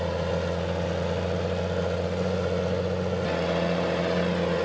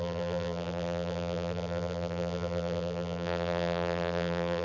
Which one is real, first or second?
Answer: first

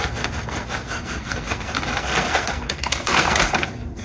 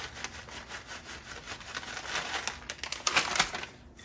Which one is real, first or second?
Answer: second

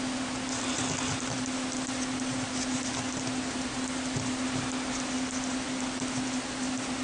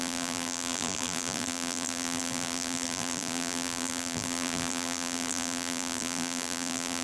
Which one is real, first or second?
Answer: first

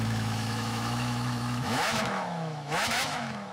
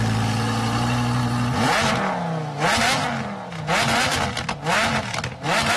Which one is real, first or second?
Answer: second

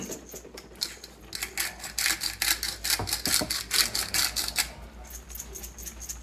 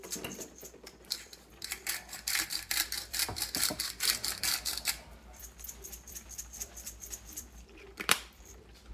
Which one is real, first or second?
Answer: first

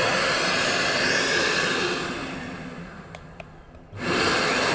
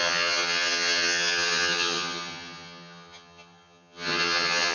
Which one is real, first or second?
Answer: first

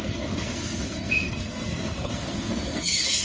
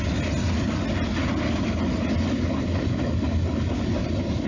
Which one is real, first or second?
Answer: second